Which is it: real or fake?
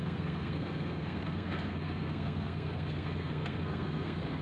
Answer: fake